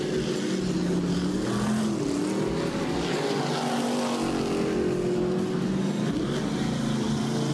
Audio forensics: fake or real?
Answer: real